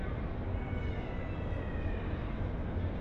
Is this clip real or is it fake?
real